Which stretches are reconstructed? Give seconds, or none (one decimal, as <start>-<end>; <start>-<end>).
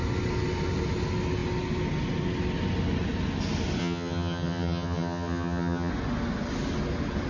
3.8-5.9